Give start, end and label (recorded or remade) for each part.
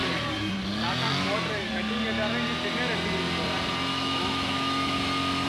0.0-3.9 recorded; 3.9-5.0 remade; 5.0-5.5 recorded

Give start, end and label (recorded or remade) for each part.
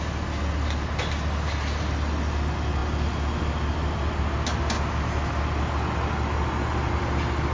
0.0-7.5 recorded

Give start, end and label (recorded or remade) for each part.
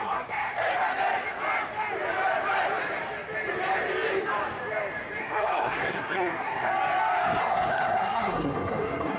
0.0-0.7 remade; 0.7-5.2 recorded; 5.2-6.7 remade; 6.7-7.4 recorded; 7.4-9.2 remade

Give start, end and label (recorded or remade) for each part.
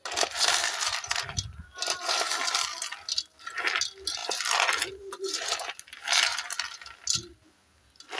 0.0-8.2 recorded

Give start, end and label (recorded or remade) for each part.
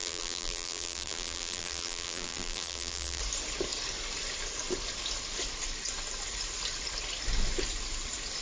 0.0-3.2 remade; 3.2-8.4 recorded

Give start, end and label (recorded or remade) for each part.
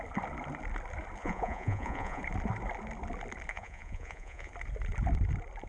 0.0-1.2 recorded; 1.2-2.2 remade; 2.2-3.5 recorded; 3.5-4.5 remade; 4.5-5.7 recorded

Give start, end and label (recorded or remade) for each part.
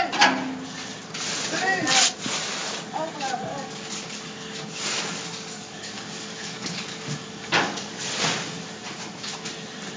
0.0-3.5 recorded; 3.5-8.0 remade; 8.0-10.0 recorded